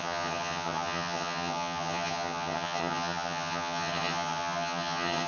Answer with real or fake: fake